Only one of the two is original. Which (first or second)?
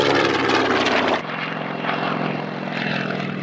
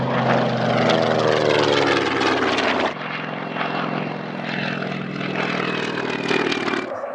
second